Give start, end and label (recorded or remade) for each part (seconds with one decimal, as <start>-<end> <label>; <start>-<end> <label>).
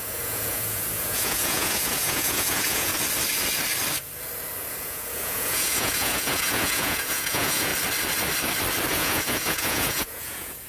0.0-2.9 remade; 2.9-4.7 recorded; 4.7-7.7 remade; 7.7-8.9 recorded; 8.9-10.7 remade